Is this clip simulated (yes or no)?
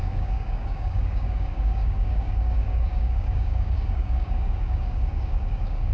yes